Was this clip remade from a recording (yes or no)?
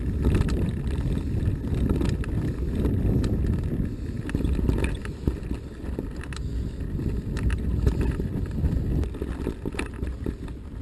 no